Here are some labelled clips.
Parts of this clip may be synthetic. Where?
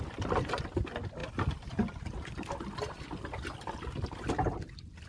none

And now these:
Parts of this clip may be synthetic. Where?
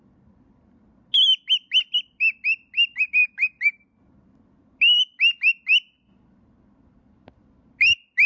none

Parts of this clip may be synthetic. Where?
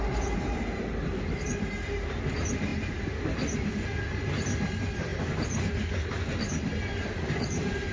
none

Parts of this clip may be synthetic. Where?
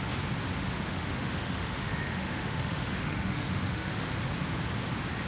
0.9-4.1 (autoencoder, DAC-VAE)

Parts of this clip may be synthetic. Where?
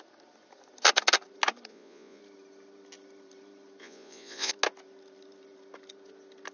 1.7-2.2 (vocoder, Vocos); 3.8-4.5